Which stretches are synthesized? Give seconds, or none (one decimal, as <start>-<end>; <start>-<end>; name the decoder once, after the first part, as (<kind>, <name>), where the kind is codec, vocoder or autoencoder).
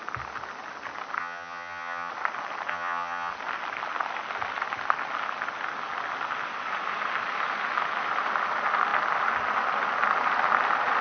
1.2-2.1 (vocoder, HiFi-GAN); 2.7-3.3